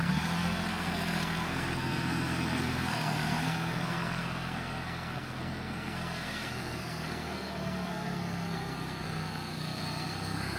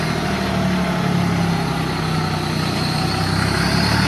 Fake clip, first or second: first